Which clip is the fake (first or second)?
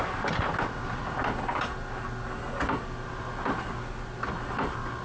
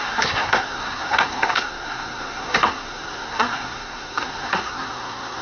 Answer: second